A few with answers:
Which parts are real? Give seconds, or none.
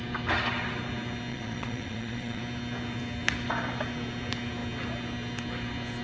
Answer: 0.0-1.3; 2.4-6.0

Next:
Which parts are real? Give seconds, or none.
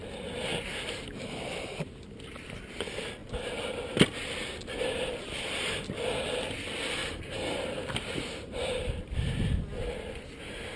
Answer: 0.0-0.5; 2.5-7.0; 9.5-10.8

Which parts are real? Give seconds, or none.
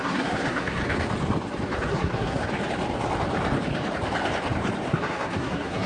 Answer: 0.8-1.9; 2.4-4.9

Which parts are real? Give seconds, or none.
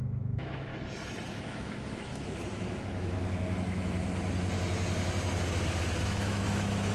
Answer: 0.7-1.3; 4.0-6.0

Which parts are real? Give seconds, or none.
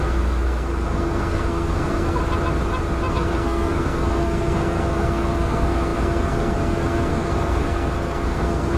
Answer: 2.2-3.1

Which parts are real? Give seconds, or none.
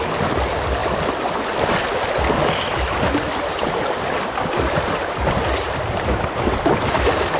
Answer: 0.0-7.4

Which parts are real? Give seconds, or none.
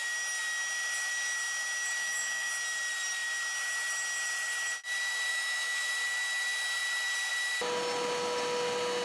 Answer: 0.0-2.0; 2.5-5.3; 5.9-9.0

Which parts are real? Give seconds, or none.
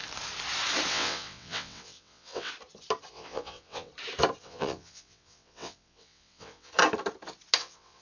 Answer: 0.0-0.9; 2.5-3.1; 3.9-4.4; 6.7-7.6